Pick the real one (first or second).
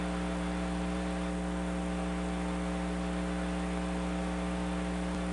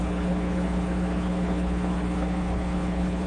first